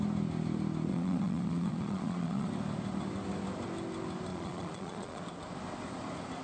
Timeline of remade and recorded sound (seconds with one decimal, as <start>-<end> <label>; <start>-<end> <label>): 0.0-0.9 recorded; 0.9-2.5 remade; 2.5-4.3 recorded; 4.3-5.2 remade; 5.2-6.4 recorded